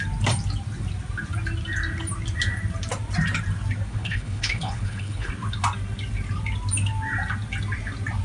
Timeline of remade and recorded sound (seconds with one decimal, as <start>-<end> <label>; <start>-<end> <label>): 0.0-3.9 recorded; 3.9-5.3 remade; 5.3-8.2 recorded